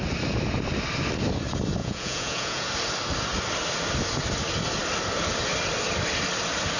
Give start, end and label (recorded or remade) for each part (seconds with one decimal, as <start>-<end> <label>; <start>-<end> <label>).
0.0-1.8 recorded; 1.8-2.7 remade; 2.7-6.8 recorded